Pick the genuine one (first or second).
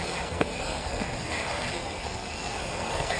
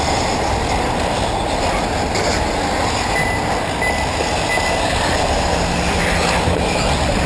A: second